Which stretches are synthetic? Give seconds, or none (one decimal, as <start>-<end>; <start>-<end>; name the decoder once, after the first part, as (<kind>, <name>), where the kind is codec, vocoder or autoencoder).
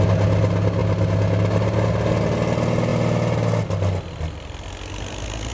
none